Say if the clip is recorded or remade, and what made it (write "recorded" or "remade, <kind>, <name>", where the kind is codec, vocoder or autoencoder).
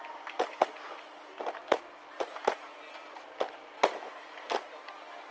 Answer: recorded